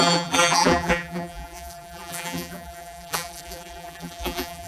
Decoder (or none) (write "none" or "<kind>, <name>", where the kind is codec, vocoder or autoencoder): vocoder, BigVGAN v2